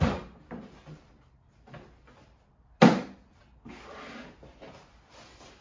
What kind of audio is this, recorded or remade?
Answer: recorded